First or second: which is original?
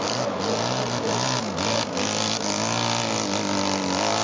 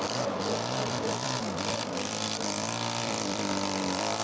first